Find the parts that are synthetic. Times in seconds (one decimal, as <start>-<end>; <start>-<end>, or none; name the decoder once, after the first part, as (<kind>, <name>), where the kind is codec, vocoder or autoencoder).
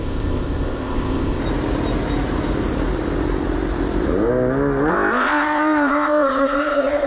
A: 0.0-1.4 (codec, ZipCodec); 4.9-7.1